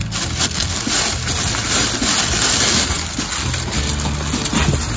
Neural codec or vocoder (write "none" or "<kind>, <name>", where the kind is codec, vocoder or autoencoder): none